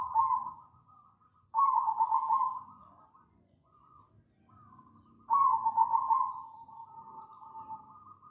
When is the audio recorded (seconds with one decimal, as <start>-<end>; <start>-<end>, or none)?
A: 0.0-0.4; 4.0-5.8; 6.5-8.3